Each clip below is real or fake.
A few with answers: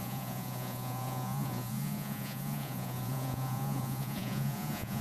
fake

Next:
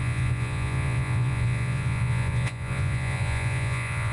fake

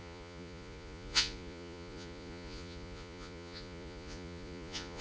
fake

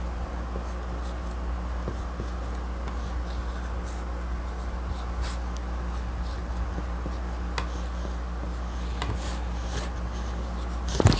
real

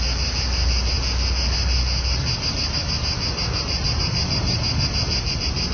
real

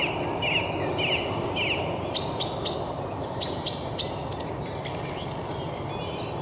real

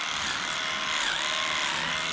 real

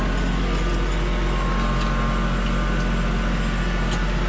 real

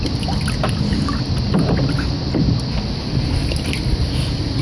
real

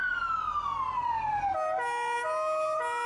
real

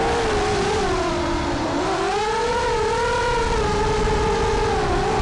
real